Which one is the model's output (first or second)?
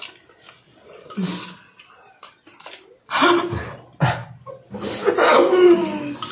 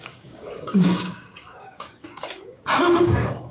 second